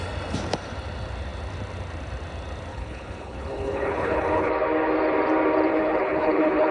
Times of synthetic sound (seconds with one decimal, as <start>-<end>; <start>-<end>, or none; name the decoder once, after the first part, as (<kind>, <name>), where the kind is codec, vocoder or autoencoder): 2.7-4.5 (codec, HILCodec); 5.7-6.7